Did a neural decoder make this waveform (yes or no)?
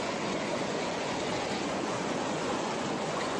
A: yes